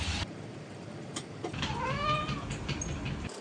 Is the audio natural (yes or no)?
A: yes